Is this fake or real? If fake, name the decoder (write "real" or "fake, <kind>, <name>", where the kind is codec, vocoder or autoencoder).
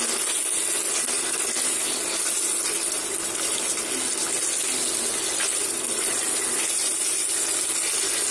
real